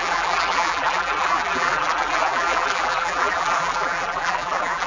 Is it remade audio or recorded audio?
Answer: remade